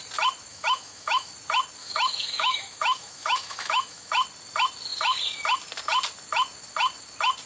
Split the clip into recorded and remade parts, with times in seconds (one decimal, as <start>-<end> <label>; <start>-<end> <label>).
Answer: 0.0-0.5 recorded; 0.5-1.3 remade; 1.3-1.8 recorded; 1.8-4.1 remade; 4.1-7.5 recorded